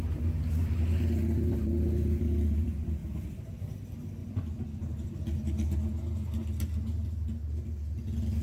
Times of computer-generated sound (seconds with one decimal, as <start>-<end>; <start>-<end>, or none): 3.0-3.6; 4.2-5.2